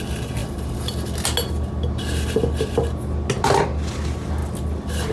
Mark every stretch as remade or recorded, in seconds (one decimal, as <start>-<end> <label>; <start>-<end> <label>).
0.0-5.1 recorded

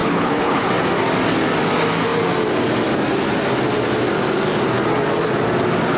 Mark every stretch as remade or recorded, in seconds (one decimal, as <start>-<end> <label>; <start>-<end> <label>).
0.0-0.7 remade; 0.7-6.0 recorded

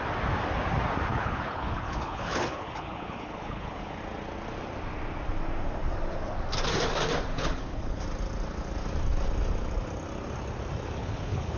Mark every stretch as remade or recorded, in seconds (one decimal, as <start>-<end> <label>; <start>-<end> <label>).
0.0-1.1 recorded; 1.1-4.0 remade; 4.0-7.3 recorded; 7.3-8.0 remade; 8.0-11.0 recorded; 11.0-11.6 remade